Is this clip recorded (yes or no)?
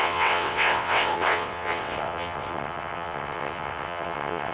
no